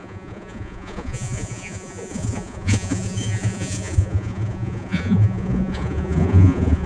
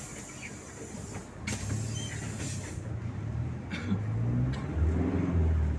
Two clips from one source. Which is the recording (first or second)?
second